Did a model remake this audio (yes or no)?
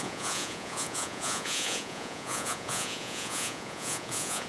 yes